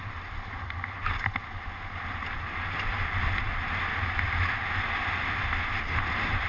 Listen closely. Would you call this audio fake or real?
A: real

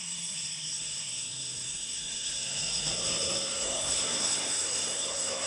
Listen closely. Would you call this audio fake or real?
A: fake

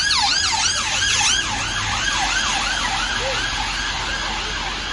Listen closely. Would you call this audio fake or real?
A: real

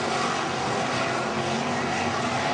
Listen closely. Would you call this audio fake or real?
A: real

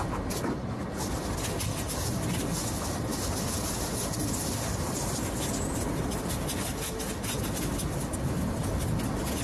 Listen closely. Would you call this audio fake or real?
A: real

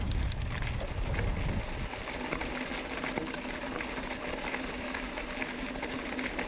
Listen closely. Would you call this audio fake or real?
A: real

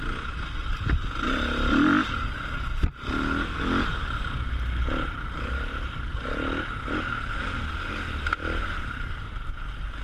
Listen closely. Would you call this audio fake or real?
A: real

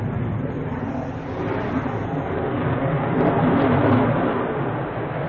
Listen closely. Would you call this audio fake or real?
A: real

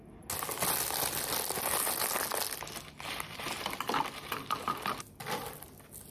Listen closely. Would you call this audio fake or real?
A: real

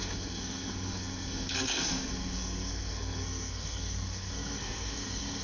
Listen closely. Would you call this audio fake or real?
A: fake